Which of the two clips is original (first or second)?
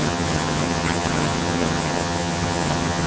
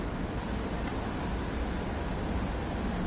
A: second